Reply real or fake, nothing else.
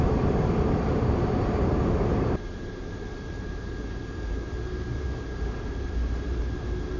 fake